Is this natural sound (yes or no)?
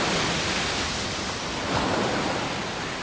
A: yes